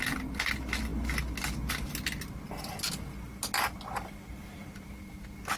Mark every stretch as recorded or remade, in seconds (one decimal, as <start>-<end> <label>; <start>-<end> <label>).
0.0-5.6 recorded